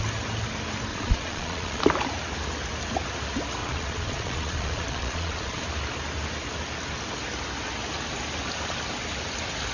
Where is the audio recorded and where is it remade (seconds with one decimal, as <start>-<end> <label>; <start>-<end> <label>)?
0.0-0.9 recorded; 0.9-1.8 remade; 1.8-3.6 recorded; 3.6-5.6 remade; 5.6-9.7 recorded